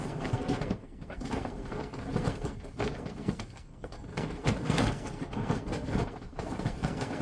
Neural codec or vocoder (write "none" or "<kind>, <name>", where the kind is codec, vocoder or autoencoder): codec, SNAC